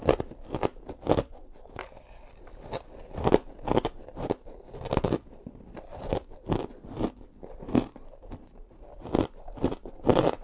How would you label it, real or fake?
real